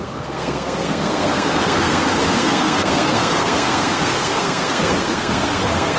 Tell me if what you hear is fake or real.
fake